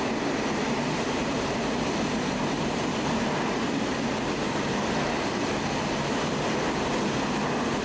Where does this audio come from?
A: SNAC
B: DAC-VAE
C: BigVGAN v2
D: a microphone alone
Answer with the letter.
D